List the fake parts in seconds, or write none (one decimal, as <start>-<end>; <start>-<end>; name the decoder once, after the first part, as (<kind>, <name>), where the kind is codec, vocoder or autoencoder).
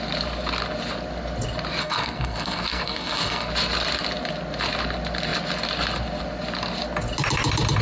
1.8-3.5 (codec, SNAC)